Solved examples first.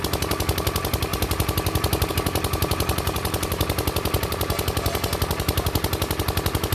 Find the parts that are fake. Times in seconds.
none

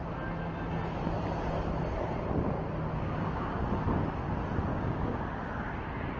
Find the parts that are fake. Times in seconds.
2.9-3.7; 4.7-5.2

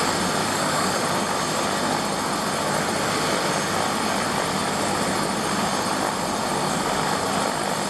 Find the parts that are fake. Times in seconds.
0.4-1.0; 6.6-7.2

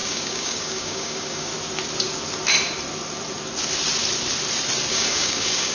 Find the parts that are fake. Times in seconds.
0.0-1.5; 4.9-5.7

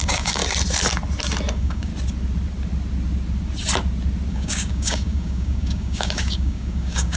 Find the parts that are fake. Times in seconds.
0.0-0.4; 1.5-1.9; 4.3-7.2

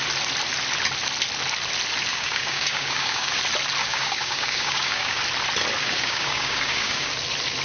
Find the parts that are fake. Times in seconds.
2.1-3.4; 3.8-5.2; 5.8-7.1